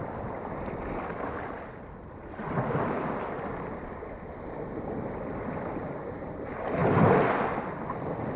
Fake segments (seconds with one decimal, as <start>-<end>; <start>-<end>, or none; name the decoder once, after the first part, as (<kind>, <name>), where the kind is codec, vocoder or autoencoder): none